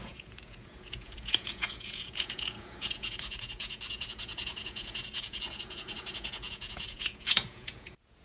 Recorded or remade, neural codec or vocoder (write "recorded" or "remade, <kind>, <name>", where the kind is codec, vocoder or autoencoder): remade, vocoder, Vocos